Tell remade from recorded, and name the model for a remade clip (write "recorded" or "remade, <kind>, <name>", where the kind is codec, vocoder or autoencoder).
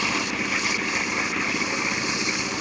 recorded